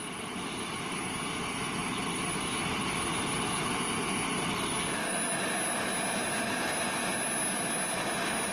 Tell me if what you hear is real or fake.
real